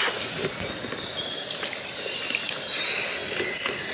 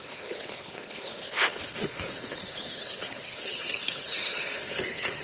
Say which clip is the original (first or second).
first